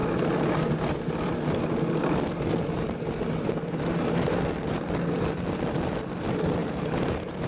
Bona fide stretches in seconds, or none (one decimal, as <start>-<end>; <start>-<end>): 0.0-6.6